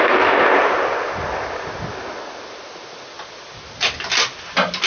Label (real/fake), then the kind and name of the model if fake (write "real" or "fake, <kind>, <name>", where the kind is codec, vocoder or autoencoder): real